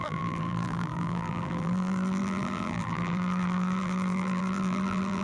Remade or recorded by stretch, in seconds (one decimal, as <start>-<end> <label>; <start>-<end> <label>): 0.0-5.2 remade